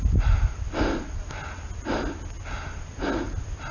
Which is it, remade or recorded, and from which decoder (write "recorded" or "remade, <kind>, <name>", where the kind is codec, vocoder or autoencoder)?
recorded